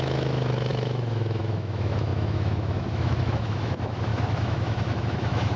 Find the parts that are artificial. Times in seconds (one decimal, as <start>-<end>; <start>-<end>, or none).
0.0-5.6